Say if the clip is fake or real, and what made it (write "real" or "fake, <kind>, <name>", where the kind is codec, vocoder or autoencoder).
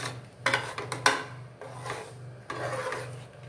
real